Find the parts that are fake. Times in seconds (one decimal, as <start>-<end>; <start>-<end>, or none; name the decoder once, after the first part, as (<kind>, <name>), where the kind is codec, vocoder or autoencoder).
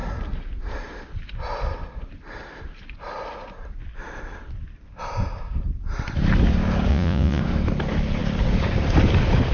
6.9-7.4 (vocoder, Vocos)